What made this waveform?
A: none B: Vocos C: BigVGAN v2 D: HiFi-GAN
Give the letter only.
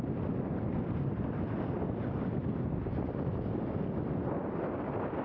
A